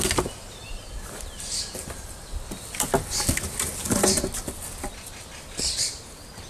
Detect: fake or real real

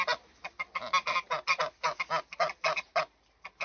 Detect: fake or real real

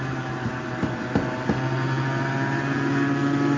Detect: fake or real real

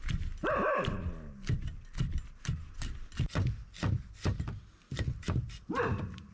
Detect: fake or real real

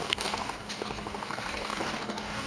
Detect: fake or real fake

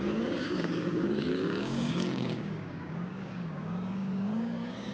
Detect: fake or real fake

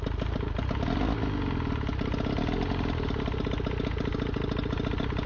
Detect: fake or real real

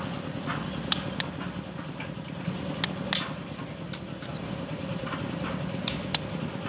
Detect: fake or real real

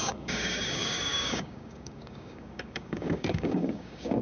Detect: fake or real fake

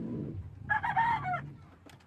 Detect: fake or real real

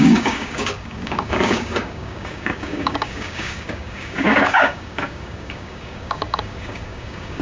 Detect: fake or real fake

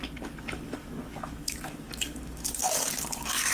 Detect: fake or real fake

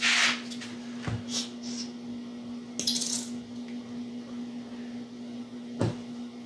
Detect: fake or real real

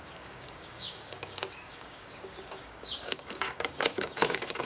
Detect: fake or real fake